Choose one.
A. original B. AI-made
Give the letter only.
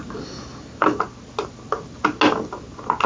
A